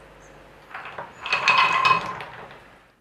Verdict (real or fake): real